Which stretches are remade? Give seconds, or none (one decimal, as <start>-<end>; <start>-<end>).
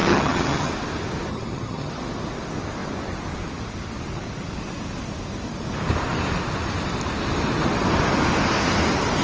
0.0-0.7; 1.3-1.9